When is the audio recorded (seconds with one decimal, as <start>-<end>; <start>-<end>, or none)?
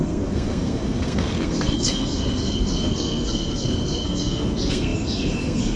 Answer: none